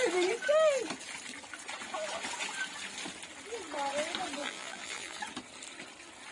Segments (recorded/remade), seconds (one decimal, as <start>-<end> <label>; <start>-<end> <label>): 0.0-4.4 recorded; 4.4-5.2 remade; 5.2-6.3 recorded